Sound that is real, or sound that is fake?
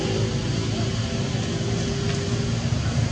real